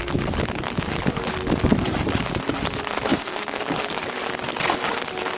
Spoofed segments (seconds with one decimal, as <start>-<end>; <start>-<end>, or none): 3.1-3.7